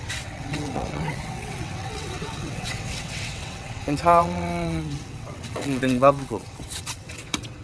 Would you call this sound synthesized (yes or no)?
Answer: yes